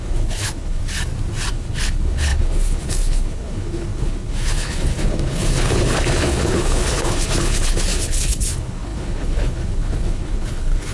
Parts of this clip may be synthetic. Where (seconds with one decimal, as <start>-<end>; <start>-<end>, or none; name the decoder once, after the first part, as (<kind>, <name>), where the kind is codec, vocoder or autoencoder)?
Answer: 0.0-0.8 (codec, HILCodec); 1.5-10.9